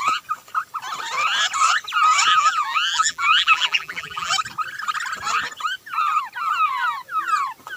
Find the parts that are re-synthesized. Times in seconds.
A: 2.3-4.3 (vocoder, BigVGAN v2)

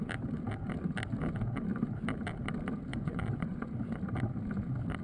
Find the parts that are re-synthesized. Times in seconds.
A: 2.9-3.7 (vocoder, Vocos)

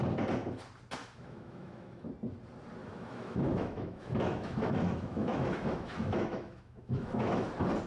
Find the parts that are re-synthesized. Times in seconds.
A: 1.0-2.1 (autoencoder, DAC-VAE); 2.8-7.5

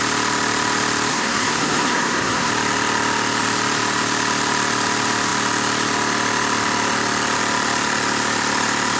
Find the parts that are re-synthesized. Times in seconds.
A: 1.1-2.5 (codec, SNAC)

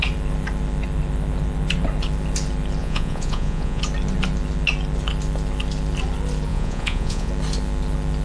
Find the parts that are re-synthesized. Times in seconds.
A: 2.8-3.8 (vocoder, Vocos); 6.5-7.3

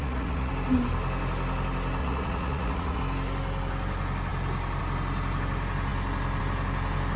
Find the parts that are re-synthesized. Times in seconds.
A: 0.0-0.5 (vocoder, Vocos); 2.0-3.0